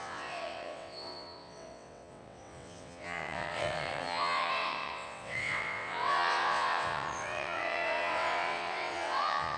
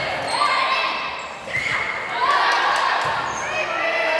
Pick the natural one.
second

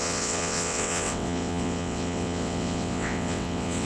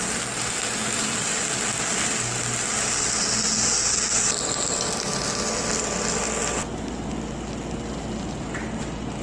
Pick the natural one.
second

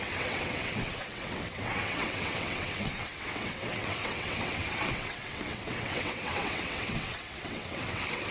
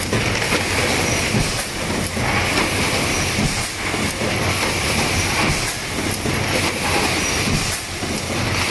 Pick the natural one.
second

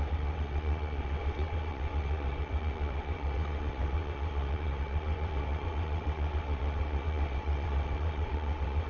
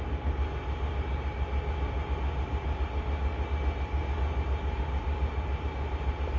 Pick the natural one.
second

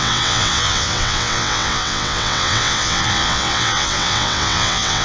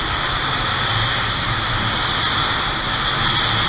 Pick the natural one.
second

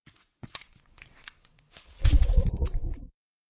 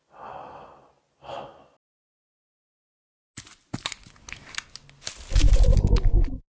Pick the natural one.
second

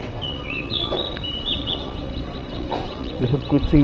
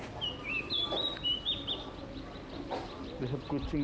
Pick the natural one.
second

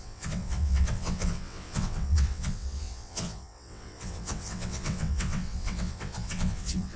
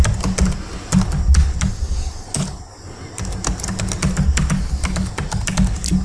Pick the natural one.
second